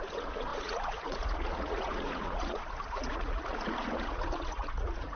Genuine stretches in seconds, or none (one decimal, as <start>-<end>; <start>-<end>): none